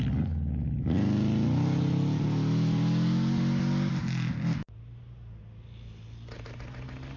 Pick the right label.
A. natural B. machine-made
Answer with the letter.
A